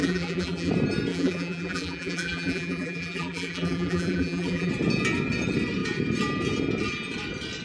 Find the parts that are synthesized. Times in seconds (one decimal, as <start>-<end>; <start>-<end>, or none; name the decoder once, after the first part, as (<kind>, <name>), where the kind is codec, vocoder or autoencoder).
0.0-0.7 (vocoder, BigVGAN v2); 1.1-4.7